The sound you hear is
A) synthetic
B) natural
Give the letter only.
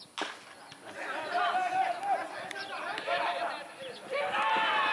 B